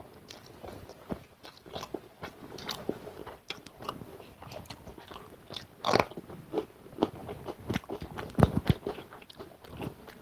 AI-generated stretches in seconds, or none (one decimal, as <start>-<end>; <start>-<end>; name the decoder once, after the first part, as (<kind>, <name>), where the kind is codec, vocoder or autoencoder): 3.2-5.6 (vocoder, BigVGAN v2); 7.2-9.3